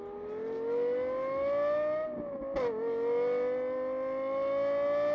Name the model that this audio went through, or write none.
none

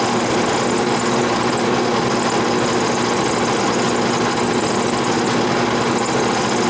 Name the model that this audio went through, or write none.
none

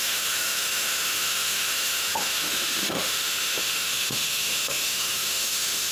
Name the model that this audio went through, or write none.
autoencoder, DAC-VAE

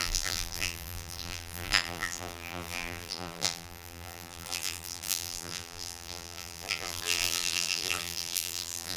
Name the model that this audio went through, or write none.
vocoder, BigVGAN v2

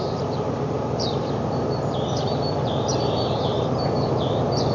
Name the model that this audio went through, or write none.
vocoder, BigVGAN v2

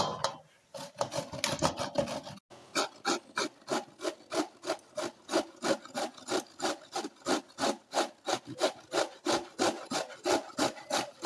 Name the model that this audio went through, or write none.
none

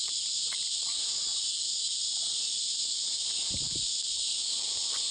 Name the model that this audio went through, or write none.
vocoder, BigVGAN v2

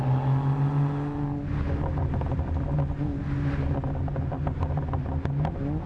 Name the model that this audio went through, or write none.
none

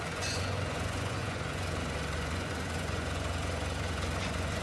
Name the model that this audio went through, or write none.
vocoder, Vocos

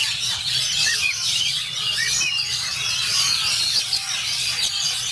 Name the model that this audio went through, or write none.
vocoder, Vocos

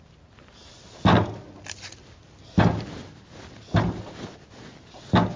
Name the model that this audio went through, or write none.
none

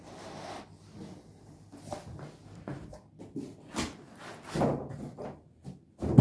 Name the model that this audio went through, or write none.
none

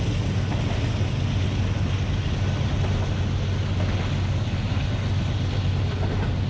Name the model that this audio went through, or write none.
none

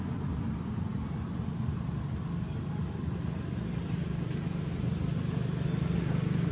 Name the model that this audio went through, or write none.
none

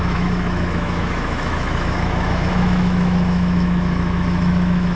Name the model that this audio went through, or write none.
autoencoder, DAC-VAE